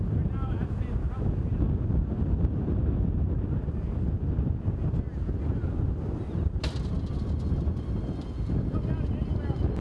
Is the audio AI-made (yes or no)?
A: no